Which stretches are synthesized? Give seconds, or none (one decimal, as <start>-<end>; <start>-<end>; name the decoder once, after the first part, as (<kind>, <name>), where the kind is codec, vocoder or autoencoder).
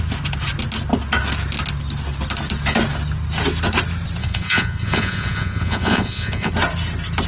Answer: 4.2-6.5 (vocoder, Vocos)